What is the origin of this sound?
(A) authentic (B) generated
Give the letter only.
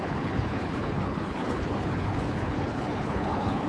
B